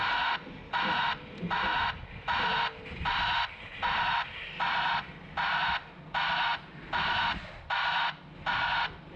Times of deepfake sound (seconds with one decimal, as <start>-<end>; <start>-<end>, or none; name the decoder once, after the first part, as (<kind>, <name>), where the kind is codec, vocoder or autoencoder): none